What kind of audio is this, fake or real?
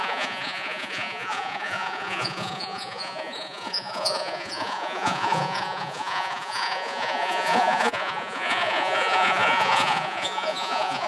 fake